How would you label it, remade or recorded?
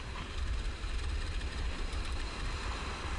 recorded